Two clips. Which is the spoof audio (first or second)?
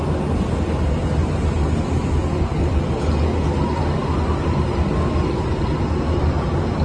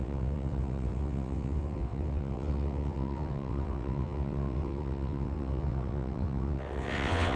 second